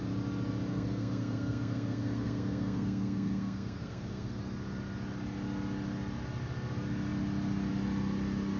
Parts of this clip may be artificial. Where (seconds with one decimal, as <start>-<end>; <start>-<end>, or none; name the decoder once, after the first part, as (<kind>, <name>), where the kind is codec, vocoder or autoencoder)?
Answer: 0.7-4.4 (codec, SNAC)